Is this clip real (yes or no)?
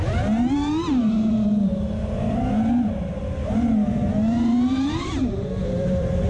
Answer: no